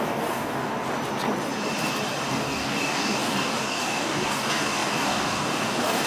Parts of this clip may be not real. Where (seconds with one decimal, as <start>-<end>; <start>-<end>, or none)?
0.0-0.7; 2.3-6.1